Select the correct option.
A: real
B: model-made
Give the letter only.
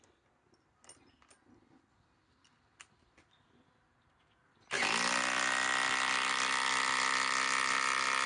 A